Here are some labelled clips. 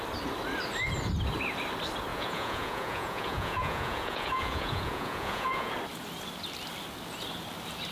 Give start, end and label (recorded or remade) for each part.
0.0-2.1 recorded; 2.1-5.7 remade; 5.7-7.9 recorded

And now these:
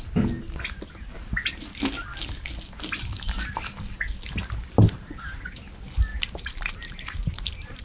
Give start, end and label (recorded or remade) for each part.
0.0-6.1 recorded; 6.1-7.8 remade

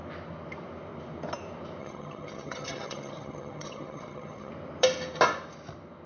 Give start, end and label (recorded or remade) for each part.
0.0-1.8 recorded; 1.8-4.5 remade; 4.5-6.1 recorded

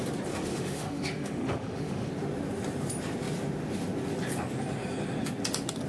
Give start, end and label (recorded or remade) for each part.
0.0-0.5 recorded; 0.5-2.1 remade; 2.1-5.9 recorded

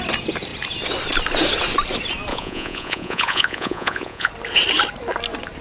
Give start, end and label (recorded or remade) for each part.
0.0-2.3 recorded; 2.3-4.3 remade; 4.3-5.6 recorded